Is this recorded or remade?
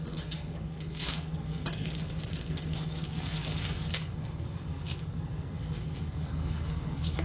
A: remade